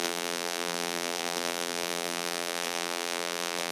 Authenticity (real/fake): fake